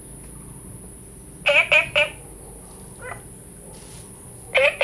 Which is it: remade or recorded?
recorded